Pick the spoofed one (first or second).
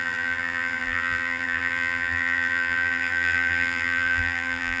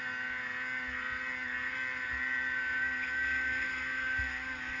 first